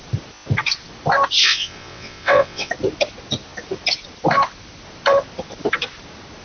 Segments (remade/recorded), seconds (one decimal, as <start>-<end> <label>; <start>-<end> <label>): 0.0-1.4 recorded; 1.4-2.7 remade; 2.7-6.4 recorded